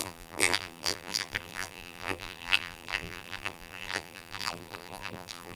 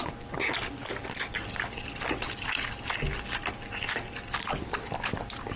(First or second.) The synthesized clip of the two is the first